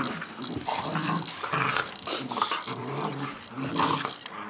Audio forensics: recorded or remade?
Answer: recorded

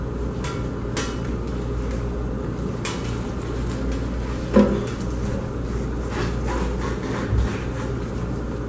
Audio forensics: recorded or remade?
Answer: recorded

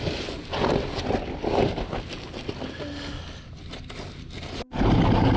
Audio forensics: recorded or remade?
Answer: recorded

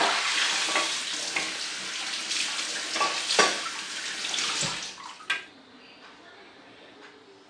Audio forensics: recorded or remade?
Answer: recorded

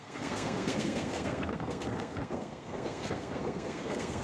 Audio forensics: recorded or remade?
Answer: remade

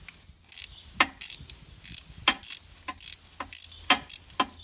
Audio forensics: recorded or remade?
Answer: recorded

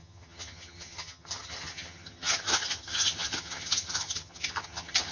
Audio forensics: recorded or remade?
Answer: remade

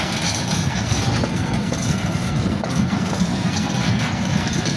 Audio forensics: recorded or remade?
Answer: remade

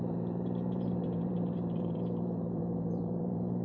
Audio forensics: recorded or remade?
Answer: remade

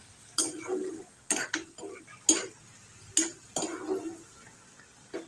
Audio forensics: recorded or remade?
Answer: recorded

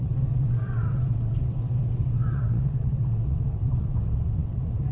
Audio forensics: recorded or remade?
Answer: remade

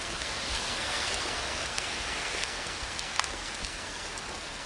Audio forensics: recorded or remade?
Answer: remade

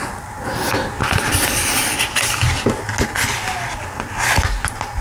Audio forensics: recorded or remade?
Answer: recorded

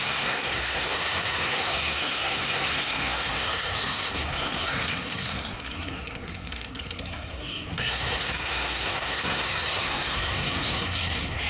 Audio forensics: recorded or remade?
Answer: remade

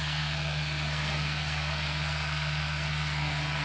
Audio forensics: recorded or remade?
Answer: remade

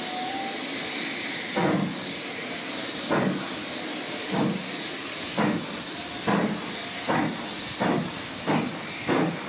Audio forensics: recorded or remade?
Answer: recorded